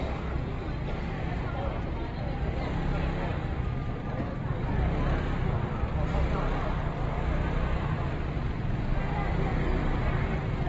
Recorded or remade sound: remade